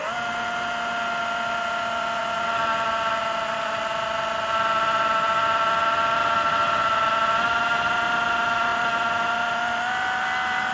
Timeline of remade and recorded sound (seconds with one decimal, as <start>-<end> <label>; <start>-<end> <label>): 0.0-10.7 recorded